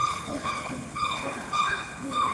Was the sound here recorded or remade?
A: remade